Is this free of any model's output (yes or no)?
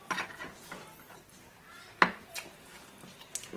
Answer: yes